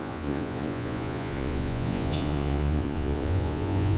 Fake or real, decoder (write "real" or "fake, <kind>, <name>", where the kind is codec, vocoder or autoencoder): fake, vocoder, Vocos